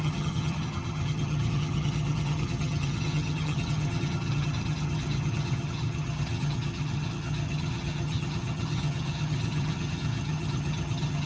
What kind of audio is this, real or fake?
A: fake